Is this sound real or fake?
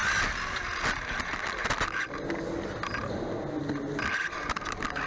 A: real